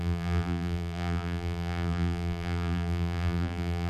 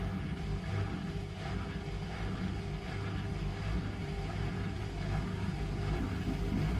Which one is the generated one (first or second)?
first